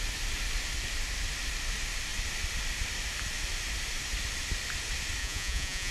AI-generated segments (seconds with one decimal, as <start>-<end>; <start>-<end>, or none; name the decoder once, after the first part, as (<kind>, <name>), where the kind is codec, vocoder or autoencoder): 5.2-5.9 (vocoder, Vocos)